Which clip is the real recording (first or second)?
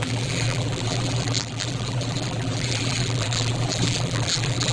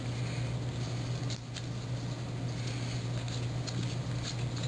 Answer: second